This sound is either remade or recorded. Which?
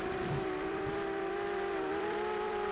remade